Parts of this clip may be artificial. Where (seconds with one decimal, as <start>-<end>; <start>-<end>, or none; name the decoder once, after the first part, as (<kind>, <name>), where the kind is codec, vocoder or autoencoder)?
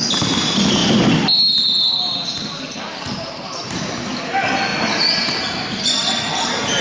2.4-4.3 (vocoder, BigVGAN v2)